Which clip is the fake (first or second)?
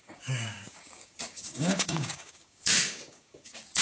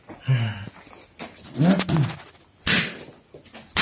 first